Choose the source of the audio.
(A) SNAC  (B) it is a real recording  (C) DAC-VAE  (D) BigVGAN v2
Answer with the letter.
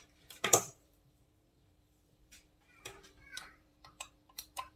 D